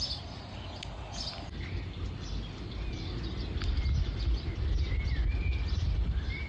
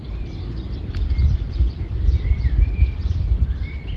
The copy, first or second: second